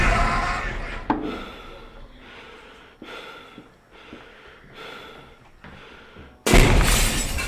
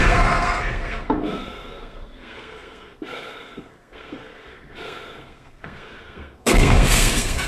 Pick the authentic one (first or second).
first